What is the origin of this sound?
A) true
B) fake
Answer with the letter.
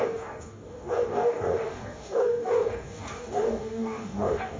B